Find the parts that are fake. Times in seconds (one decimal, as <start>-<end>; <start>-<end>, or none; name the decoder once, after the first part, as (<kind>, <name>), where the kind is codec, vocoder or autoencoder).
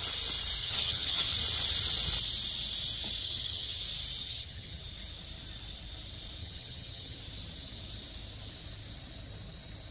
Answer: 0.6-1.3 (vocoder, HiFi-GAN); 3.2-3.8; 4.2-4.8; 6.4-7.2